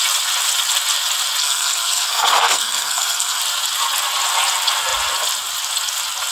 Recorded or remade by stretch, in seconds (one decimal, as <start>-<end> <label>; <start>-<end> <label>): 0.0-1.4 recorded; 1.4-3.4 remade; 3.4-6.3 recorded